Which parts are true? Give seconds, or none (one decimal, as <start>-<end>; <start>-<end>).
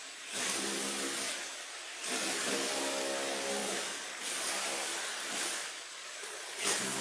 1.6-2.1; 4.9-5.4